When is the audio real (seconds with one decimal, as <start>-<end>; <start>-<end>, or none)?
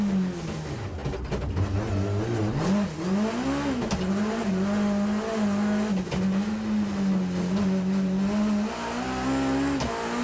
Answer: 0.0-10.2